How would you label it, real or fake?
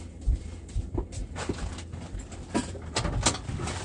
real